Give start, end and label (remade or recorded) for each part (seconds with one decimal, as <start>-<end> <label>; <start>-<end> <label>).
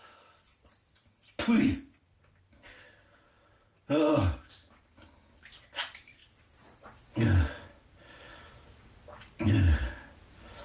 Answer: 0.0-10.6 recorded